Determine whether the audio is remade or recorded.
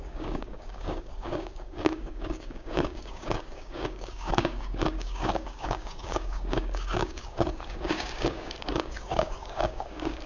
remade